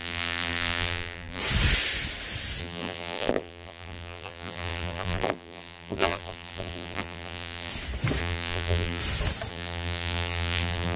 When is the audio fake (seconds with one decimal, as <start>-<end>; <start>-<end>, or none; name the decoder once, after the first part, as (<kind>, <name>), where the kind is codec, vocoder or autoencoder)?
0.0-1.4 (vocoder, BigVGAN v2); 2.6-7.7; 8.2-9.0; 9.5-11.0